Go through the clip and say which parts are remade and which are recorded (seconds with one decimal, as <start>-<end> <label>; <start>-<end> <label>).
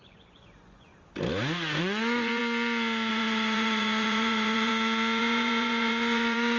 0.0-0.9 remade; 0.9-1.8 recorded; 1.8-2.4 remade; 2.4-3.1 recorded; 3.1-4.7 remade; 4.7-5.2 recorded; 5.2-6.6 remade